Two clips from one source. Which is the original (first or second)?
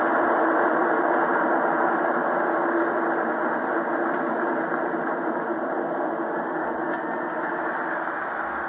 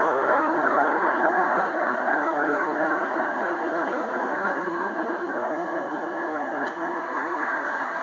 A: first